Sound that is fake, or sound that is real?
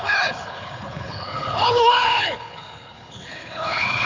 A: fake